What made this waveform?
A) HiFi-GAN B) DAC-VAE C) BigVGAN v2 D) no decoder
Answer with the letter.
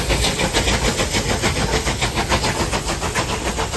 D